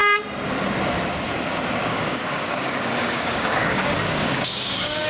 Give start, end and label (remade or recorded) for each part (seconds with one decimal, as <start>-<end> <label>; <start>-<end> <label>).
0.0-1.8 recorded; 1.8-5.1 remade